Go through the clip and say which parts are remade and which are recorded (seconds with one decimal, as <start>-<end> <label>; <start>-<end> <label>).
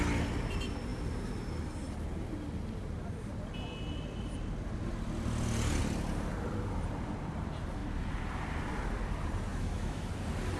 0.0-9.5 recorded; 9.5-10.1 remade; 10.1-10.6 recorded